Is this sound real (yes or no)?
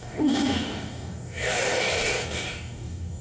no